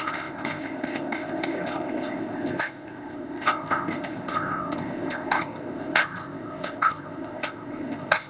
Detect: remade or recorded remade